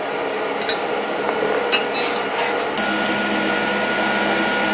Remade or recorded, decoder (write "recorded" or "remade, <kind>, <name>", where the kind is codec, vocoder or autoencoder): recorded